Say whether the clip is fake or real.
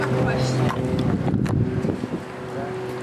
real